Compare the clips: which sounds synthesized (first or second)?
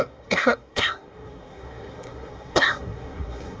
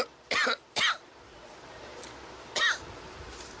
first